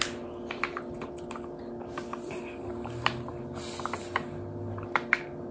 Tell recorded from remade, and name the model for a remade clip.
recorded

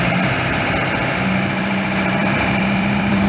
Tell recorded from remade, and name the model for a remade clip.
remade, vocoder, BigVGAN v2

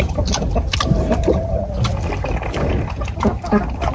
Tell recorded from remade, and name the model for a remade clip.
recorded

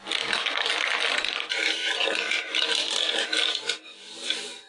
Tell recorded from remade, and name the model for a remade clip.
recorded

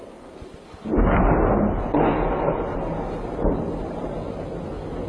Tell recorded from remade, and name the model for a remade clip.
recorded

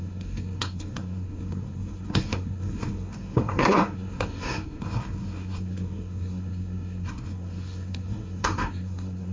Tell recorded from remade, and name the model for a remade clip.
remade, codec, SNAC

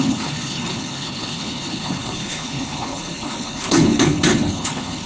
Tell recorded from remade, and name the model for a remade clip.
remade, codec, HILCodec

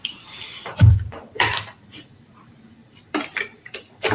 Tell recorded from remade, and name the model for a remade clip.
remade, vocoder, BigVGAN v2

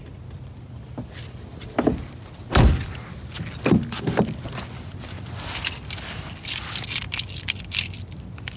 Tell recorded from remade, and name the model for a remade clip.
recorded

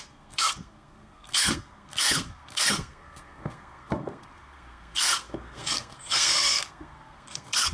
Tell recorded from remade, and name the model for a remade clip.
remade, codec, SNAC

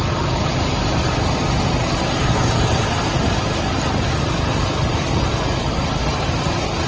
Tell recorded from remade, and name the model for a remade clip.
recorded